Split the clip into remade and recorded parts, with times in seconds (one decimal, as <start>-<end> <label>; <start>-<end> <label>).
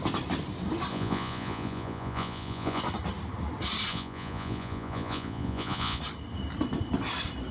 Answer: 0.0-0.9 recorded; 0.9-2.8 remade; 2.8-3.9 recorded; 3.9-6.0 remade; 6.0-7.5 recorded